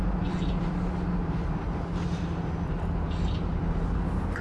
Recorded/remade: recorded